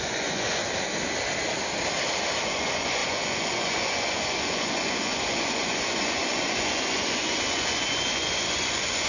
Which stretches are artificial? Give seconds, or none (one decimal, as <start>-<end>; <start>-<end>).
0.0-0.6; 2.4-9.1